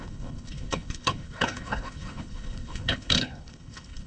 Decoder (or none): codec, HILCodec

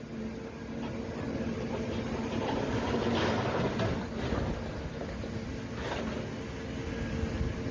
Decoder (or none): none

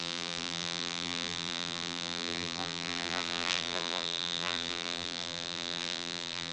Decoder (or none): vocoder, BigVGAN v2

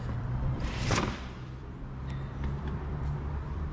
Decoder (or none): vocoder, BigVGAN v2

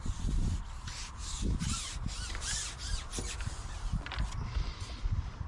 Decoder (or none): none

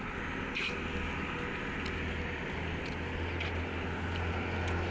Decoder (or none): none